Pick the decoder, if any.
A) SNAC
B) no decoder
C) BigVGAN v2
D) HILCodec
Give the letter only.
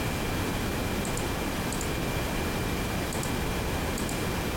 B